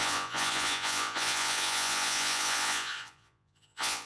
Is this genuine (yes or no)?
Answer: no